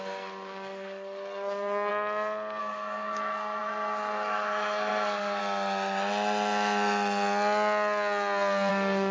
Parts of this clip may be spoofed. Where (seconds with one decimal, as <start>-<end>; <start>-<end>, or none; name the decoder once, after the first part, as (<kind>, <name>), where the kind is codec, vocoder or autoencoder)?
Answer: 0.0-1.9 (codec, SNAC); 2.6-5.4; 8.7-9.1